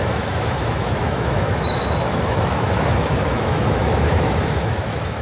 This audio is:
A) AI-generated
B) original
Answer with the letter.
A